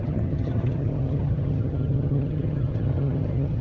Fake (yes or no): yes